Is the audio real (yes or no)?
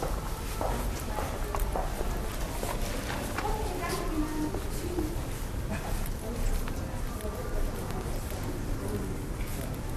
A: yes